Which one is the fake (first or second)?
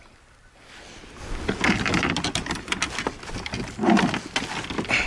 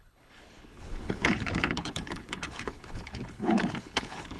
second